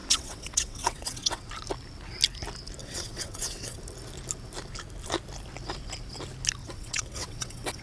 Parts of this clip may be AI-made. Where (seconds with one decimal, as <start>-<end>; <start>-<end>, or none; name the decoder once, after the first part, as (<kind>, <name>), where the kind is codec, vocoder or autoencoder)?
0.0-1.5 (vocoder, WaveNeXt); 2.8-3.8; 6.6-7.8